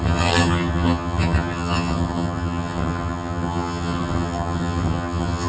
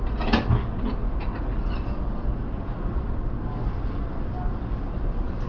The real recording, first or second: second